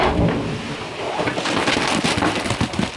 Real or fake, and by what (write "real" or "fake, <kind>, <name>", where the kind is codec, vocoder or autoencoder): real